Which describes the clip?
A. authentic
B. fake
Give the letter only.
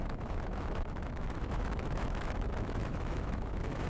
B